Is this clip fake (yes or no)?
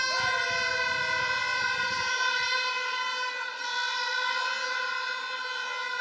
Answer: no